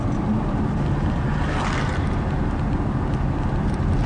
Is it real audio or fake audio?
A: real